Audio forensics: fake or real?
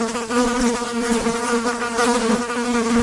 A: real